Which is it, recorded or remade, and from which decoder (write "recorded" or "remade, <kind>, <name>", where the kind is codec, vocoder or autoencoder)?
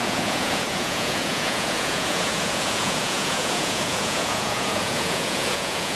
remade, vocoder, Vocos